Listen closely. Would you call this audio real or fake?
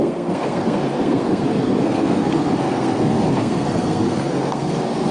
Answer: fake